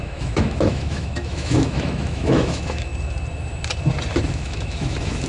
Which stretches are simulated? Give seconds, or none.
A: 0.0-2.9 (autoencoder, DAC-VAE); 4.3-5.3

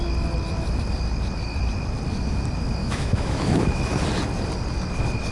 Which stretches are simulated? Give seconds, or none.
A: 2.8-4.0 (autoencoder, DAC-VAE)

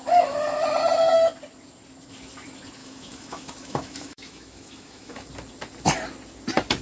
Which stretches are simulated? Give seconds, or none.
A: 2.8-5.2 (autoencoder, DAC-VAE)